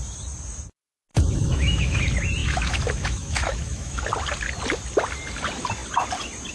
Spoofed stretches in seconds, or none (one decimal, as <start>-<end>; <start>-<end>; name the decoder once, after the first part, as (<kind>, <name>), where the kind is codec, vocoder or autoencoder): 1.1-2.0 (autoencoder, DAC-VAE); 2.4-4.0